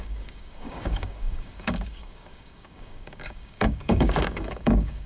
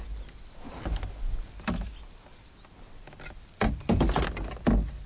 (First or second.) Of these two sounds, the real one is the second